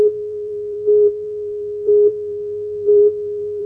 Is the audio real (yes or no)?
no